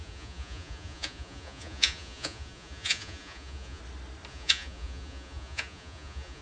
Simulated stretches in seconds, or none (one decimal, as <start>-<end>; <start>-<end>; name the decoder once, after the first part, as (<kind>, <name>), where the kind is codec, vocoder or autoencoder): 0.0-3.8 (vocoder, Vocos); 4.3-6.4